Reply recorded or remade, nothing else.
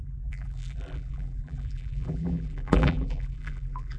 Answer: remade